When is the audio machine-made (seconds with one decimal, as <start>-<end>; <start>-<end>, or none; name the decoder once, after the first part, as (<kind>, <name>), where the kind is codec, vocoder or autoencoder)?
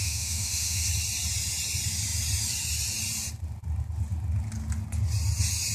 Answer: 0.0-0.9 (autoencoder, DAC-VAE)